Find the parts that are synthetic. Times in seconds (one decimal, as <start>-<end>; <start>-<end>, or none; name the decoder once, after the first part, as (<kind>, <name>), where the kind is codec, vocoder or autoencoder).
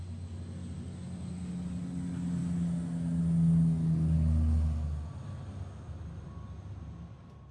none